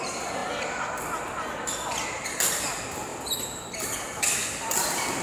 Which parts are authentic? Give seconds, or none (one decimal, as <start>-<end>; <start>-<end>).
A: 0.0-3.1; 4.7-5.2